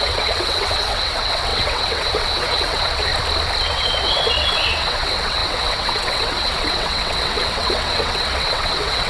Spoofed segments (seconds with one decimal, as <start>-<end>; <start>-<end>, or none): 0.0-3.1; 3.6-9.1